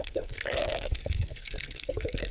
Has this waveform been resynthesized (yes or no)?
yes